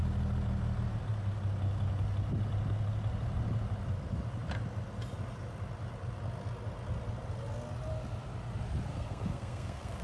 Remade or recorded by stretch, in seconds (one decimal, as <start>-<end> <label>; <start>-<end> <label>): 0.0-8.9 recorded; 8.9-10.0 remade